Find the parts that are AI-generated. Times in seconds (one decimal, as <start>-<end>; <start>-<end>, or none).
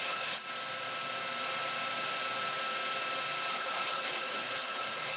0.0-0.4; 3.5-5.2